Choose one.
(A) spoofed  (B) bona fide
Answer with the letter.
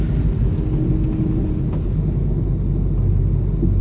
B